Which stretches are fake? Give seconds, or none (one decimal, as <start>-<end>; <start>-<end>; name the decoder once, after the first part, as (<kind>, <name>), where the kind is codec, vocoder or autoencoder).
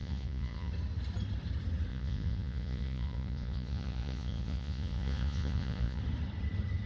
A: 0.0-0.7 (vocoder, Vocos); 1.9-6.0